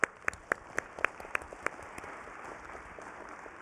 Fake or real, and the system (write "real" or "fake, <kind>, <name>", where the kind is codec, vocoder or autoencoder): real